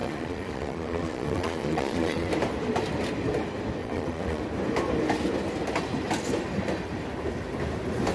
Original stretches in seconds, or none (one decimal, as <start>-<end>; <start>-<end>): 2.3-3.8; 4.4-8.1